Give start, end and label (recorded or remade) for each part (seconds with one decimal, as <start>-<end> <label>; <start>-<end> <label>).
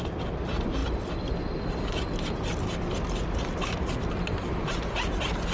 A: 0.0-5.5 recorded